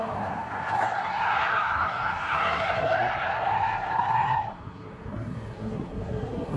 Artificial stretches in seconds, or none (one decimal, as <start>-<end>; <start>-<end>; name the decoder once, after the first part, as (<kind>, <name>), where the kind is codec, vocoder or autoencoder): 0.0-6.6 (codec, SNAC)